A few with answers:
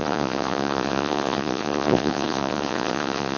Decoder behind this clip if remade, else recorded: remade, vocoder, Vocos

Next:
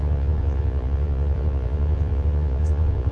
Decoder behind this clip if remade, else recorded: remade, vocoder, Vocos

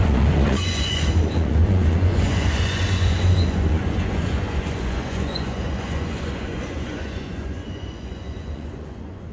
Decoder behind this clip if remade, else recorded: remade, vocoder, Vocos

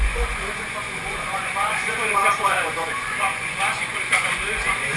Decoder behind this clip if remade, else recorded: remade, vocoder, Vocos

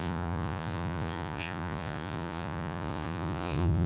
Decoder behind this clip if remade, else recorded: remade, vocoder, Vocos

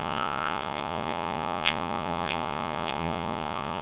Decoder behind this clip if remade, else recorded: remade, vocoder, Vocos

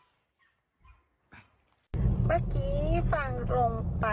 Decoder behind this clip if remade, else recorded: recorded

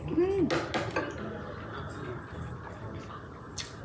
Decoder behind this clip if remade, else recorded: recorded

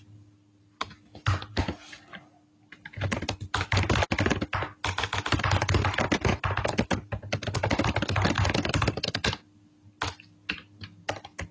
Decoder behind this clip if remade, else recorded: recorded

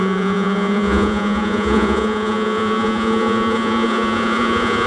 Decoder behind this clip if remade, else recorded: remade, vocoder, Vocos